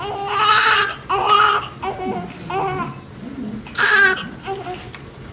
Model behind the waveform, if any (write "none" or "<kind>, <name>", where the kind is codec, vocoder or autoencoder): none